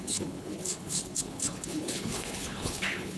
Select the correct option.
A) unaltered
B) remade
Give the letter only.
B